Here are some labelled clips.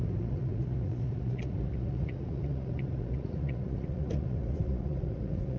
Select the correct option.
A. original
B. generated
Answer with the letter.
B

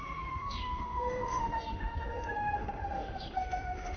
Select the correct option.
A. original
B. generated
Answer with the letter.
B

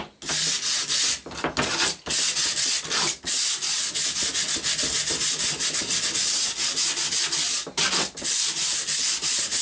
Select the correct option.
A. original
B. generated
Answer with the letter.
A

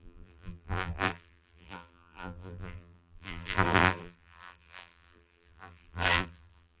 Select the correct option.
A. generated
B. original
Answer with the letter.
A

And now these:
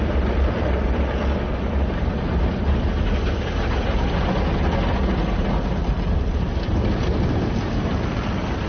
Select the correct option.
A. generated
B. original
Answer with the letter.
B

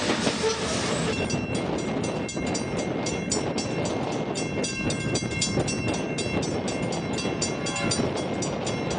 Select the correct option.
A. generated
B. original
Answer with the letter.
B